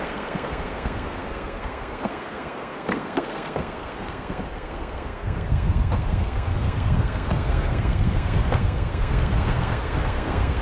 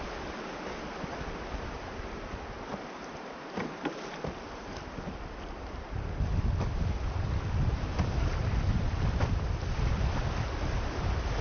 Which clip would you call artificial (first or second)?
first